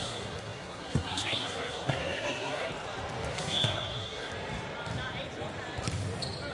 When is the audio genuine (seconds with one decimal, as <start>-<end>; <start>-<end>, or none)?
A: 2.7-3.3; 4.3-6.5